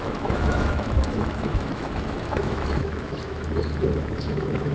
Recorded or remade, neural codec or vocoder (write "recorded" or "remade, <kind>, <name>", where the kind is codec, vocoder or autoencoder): remade, autoencoder, DAC-VAE